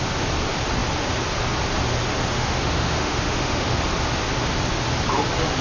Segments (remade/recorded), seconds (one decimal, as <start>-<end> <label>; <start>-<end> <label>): 0.0-2.3 recorded; 2.3-3.8 remade; 3.8-5.6 recorded